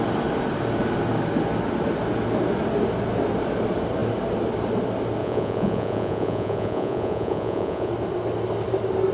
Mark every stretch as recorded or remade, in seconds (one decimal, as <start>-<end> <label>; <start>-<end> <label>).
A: 0.0-5.2 recorded; 5.2-7.9 remade; 7.9-9.1 recorded